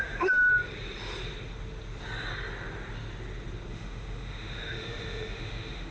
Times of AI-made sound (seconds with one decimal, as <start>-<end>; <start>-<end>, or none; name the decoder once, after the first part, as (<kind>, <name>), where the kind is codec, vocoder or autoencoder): 0.0-0.5 (autoencoder, DAC-VAE); 3.7-5.9

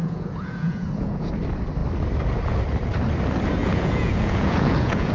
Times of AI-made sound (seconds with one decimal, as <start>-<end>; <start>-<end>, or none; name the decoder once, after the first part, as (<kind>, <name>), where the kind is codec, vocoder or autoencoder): 0.0-1.3 (vocoder, Vocos); 3.6-5.1

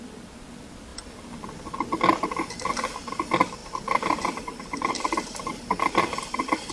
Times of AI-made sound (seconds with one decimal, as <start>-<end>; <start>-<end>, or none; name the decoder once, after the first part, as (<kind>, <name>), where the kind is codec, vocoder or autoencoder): 3.6-6.7 (vocoder, BigVGAN v2)

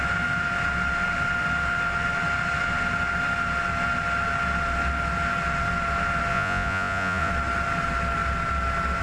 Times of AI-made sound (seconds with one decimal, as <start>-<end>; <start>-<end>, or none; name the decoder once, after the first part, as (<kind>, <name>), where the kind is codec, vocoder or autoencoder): 6.3-7.3 (vocoder, Vocos)

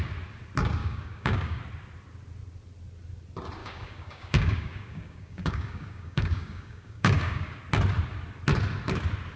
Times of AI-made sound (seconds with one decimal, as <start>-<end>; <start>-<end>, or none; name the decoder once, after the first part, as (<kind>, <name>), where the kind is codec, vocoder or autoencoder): 0.8-1.6 (codec, DAC); 3.6-7.6

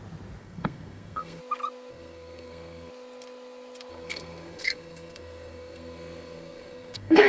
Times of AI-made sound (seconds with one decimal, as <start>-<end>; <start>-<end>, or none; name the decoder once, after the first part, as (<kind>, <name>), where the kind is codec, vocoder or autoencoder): 0.4-1.4 (codec, SNAC); 1.9-2.9; 3.9-7.3